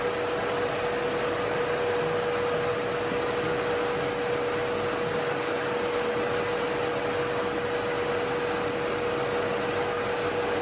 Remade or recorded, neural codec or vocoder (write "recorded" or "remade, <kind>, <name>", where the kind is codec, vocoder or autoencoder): recorded